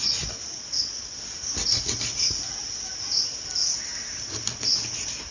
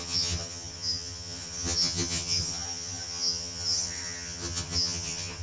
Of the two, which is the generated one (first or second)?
second